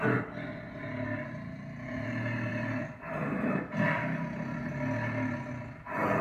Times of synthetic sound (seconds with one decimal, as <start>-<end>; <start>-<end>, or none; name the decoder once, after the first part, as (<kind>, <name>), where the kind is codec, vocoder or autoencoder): none